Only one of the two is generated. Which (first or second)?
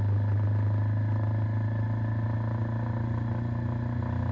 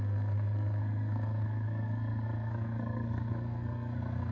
second